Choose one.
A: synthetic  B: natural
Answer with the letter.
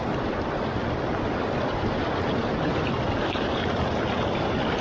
A